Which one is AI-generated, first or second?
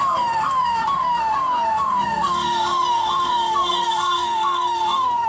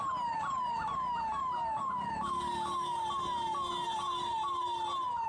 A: first